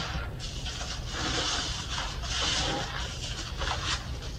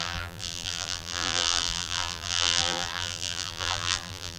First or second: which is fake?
second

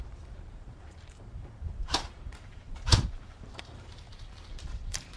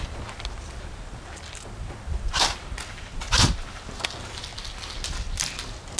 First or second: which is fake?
first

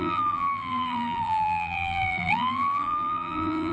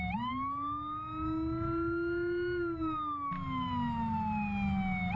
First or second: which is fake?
first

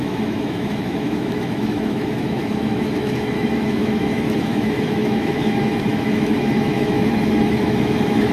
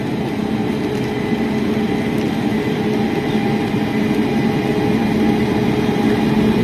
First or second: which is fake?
first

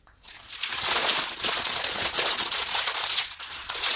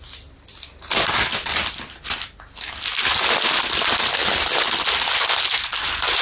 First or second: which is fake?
first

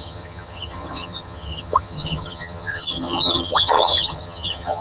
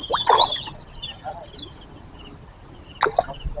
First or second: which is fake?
first